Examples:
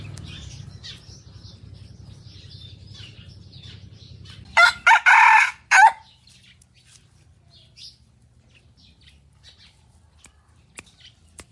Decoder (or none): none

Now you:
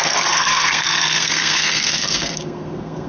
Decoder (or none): codec, SNAC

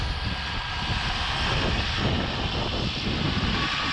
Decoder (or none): none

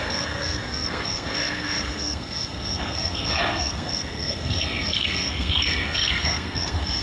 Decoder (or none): codec, SNAC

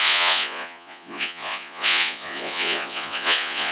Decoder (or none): vocoder, Vocos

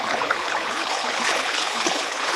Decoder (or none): codec, HILCodec